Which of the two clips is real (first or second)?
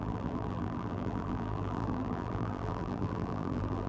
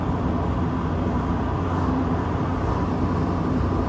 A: second